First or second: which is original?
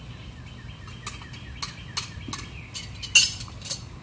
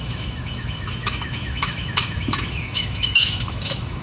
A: first